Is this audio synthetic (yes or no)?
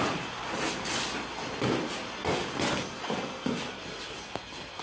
no